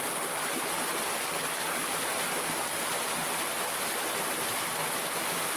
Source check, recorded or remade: recorded